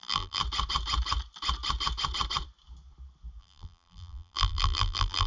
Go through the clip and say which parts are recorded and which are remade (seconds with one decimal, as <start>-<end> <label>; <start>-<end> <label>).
0.0-0.4 remade; 0.4-3.4 recorded; 3.4-5.3 remade